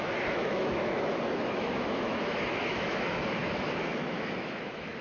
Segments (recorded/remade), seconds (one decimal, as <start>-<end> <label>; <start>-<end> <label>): 0.0-5.0 remade